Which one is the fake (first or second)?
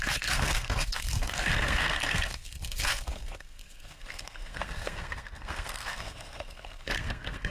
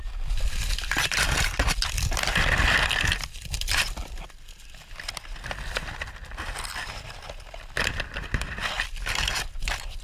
first